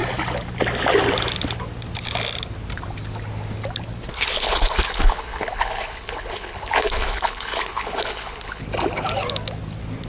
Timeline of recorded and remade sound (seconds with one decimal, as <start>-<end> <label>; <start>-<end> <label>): 0.0-4.1 recorded; 4.1-8.6 remade; 8.6-10.1 recorded